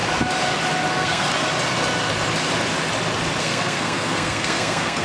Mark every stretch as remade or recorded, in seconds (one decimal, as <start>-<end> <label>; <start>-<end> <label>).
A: 0.0-0.9 recorded; 0.9-1.3 remade; 1.3-3.4 recorded; 3.4-5.0 remade